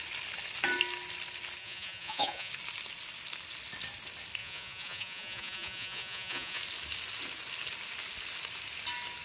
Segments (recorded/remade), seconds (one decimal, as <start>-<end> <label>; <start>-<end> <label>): 0.0-1.6 recorded; 1.6-2.5 remade; 2.5-4.4 recorded; 4.4-6.6 remade; 6.6-9.2 recorded